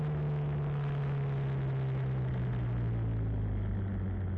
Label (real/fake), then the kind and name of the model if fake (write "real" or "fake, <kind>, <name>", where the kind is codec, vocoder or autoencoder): real